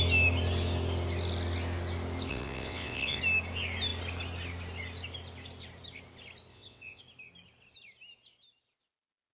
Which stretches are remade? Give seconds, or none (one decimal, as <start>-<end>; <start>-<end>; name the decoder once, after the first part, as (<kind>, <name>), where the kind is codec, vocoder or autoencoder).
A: 2.3-3.2 (vocoder, WaveNeXt); 6.5-7.0